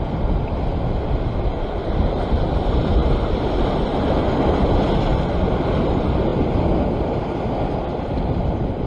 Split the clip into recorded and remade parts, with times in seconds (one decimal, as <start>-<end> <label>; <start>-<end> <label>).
0.0-3.0 remade; 3.0-5.6 recorded; 5.6-6.3 remade; 6.3-8.1 recorded; 8.1-8.9 remade